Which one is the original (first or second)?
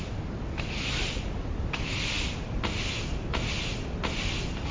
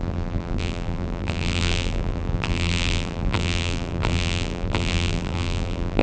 first